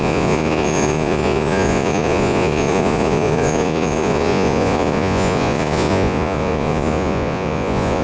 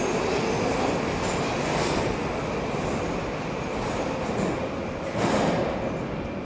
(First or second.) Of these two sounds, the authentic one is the second